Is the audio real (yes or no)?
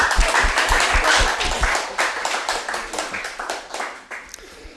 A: yes